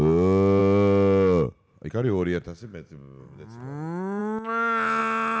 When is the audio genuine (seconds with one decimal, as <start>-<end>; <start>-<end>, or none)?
0.0-5.4